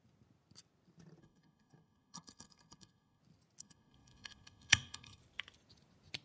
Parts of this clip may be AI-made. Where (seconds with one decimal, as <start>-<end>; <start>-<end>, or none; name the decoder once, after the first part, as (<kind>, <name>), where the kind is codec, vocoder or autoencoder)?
1.2-3.2 (codec, SNAC); 3.6-5.2